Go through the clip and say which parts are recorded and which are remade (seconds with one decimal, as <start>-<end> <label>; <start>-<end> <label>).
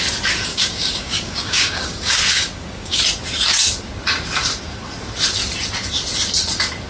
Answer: 0.0-0.5 recorded; 0.5-3.0 remade; 3.0-6.9 recorded